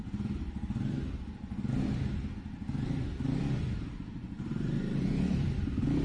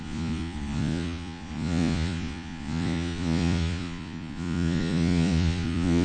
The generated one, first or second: second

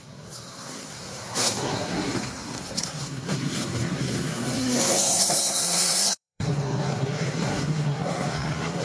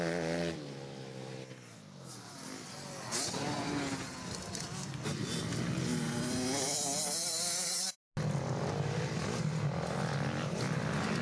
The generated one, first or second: first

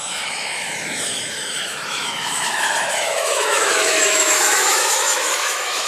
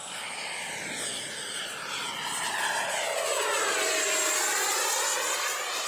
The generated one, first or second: first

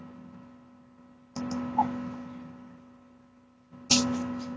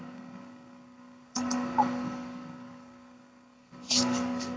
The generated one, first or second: second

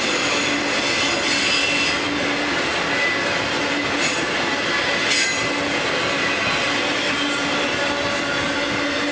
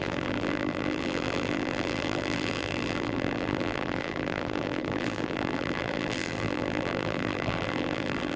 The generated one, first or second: second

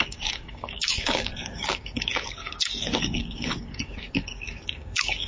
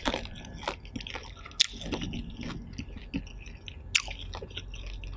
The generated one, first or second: first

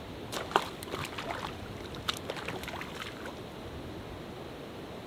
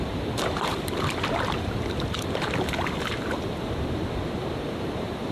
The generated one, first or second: second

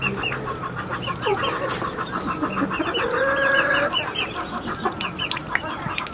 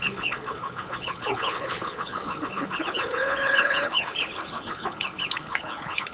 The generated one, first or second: second